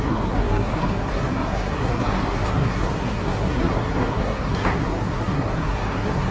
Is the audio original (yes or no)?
no